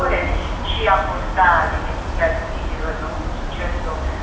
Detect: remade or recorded recorded